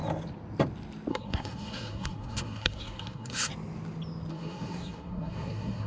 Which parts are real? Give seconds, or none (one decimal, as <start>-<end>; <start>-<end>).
0.0-1.1; 3.5-4.3